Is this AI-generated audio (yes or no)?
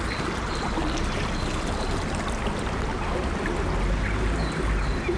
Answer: no